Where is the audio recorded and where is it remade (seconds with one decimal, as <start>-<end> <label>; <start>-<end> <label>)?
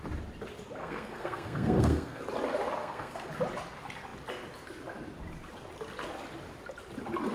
0.0-0.8 recorded; 0.8-2.2 remade; 2.2-2.8 recorded; 2.8-3.3 remade; 3.3-7.3 recorded